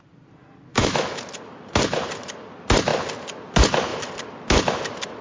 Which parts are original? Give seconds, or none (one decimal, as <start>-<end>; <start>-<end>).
0.0-0.7; 1.2-5.2